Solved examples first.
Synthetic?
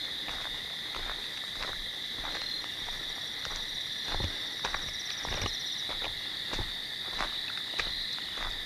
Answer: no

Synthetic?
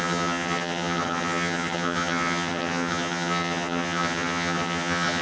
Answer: yes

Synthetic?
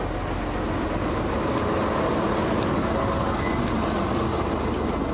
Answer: no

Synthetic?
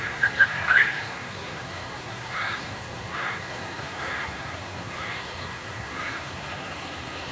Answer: yes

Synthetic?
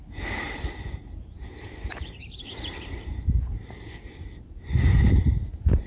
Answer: yes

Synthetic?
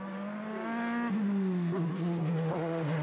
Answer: no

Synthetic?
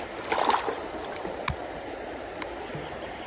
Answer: no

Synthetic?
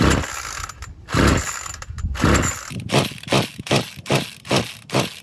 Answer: no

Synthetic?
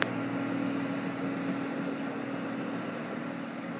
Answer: no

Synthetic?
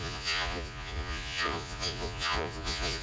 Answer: yes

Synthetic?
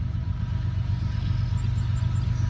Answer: no